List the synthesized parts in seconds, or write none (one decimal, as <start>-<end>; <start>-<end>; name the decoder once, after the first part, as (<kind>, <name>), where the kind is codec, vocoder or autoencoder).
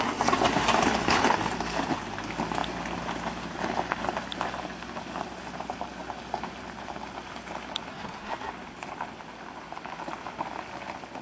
7.9-8.5 (codec, SNAC)